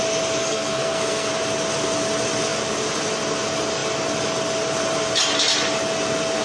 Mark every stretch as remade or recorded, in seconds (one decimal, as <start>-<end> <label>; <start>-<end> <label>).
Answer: 0.0-0.4 recorded; 0.4-1.3 remade; 1.3-6.4 recorded